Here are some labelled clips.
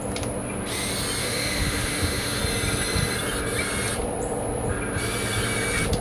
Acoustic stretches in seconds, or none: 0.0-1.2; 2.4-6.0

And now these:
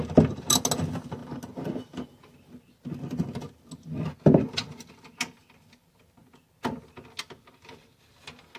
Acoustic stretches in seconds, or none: 0.0-8.6

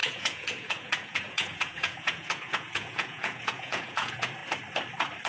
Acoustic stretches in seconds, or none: 4.4-5.3

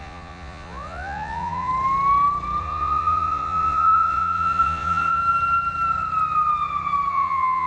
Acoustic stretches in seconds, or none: 1.7-2.6; 5.2-7.1

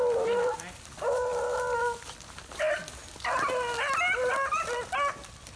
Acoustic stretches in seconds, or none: 1.3-2.3; 3.0-5.1